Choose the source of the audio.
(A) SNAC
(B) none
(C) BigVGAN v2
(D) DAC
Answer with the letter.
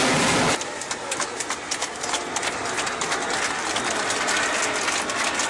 B